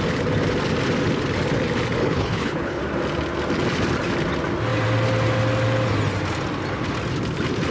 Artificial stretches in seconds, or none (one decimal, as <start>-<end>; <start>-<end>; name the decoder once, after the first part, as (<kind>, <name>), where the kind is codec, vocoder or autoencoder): 2.0-2.8 (codec, HILCodec)